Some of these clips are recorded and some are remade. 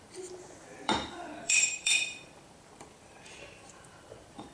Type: remade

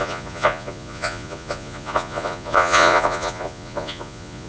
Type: remade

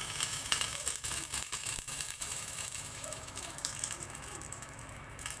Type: remade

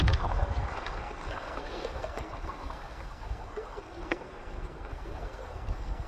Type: remade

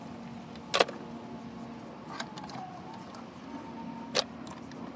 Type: recorded